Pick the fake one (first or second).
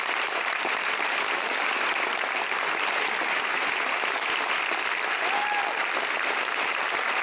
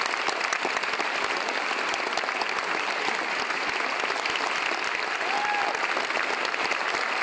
first